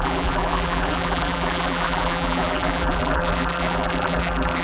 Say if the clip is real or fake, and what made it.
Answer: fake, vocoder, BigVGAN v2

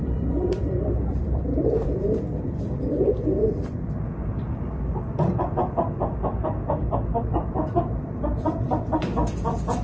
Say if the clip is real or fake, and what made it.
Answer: fake, vocoder, BigVGAN v2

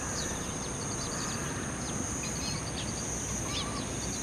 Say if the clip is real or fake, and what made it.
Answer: real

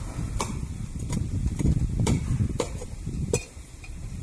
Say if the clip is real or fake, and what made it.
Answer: fake, vocoder, BigVGAN v2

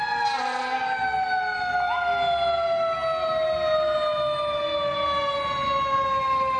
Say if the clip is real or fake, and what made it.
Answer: real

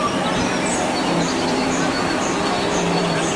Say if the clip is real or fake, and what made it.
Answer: fake, vocoder, BigVGAN v2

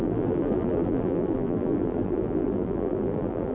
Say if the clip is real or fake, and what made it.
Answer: fake, vocoder, BigVGAN v2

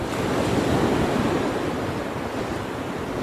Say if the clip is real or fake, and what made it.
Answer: real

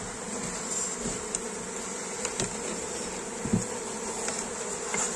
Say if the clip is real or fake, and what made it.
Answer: real